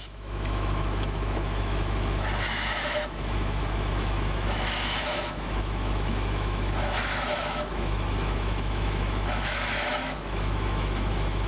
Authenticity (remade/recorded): remade